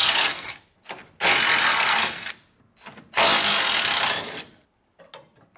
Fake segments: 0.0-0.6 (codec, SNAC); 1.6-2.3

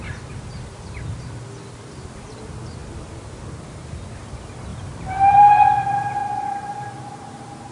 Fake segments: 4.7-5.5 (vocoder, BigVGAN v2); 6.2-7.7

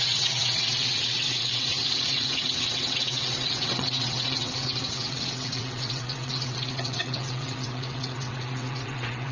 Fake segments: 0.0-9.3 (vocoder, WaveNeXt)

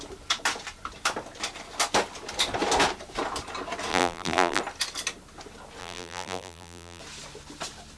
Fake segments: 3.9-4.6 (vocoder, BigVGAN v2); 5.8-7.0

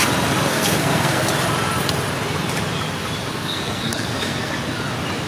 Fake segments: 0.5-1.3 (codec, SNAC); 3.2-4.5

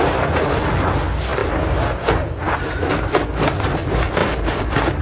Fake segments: 4.2-5.0 (vocoder, BigVGAN v2)